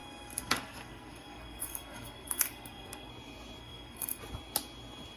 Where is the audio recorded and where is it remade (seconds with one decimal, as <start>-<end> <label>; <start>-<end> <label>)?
0.0-3.1 remade; 3.1-3.6 recorded; 3.6-4.2 remade; 4.2-5.2 recorded